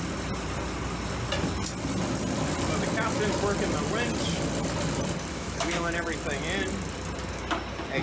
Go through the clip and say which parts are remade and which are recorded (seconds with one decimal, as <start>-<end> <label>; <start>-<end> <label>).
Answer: 0.0-5.3 recorded; 5.3-5.9 remade; 5.9-8.0 recorded